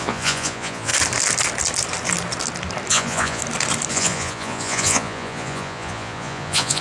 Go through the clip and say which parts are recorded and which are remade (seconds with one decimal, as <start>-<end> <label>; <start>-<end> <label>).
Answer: 0.0-0.9 remade; 0.9-2.9 recorded; 2.9-3.4 remade; 3.4-3.9 recorded; 3.9-6.8 remade

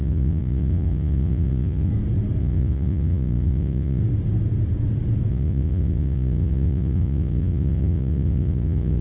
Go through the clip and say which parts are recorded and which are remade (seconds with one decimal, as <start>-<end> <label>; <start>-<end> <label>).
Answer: 0.0-1.9 remade; 1.9-2.4 recorded; 2.4-4.0 remade; 4.0-5.3 recorded; 5.3-9.0 remade